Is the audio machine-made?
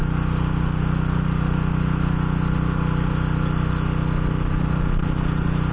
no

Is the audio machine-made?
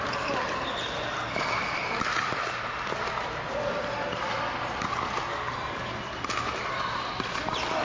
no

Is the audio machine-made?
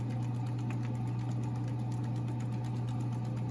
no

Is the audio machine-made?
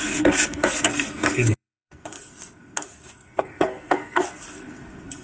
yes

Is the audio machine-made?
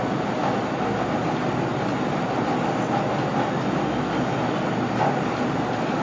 no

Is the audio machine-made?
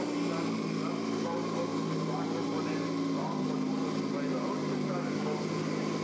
no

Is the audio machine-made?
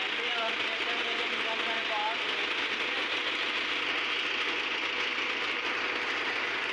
no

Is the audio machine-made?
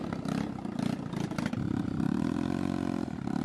no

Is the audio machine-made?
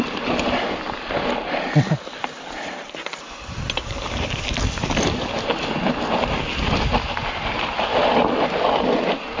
no